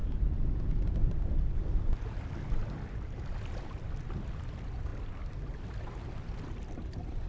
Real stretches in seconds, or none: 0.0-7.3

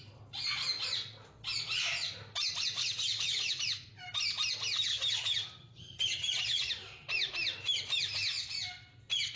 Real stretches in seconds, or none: 0.0-2.8; 3.6-4.9; 6.7-9.4

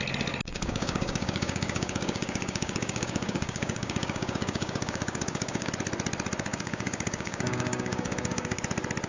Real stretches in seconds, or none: 0.0-0.5; 5.7-6.5; 8.6-9.1

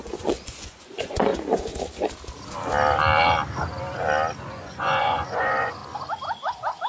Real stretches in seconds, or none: 1.3-4.4; 5.8-6.9